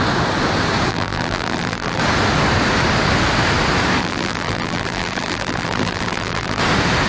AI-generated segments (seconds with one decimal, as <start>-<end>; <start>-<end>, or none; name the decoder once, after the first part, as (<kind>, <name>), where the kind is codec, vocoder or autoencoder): 0.9-2.0 (vocoder, BigVGAN v2); 4.0-6.6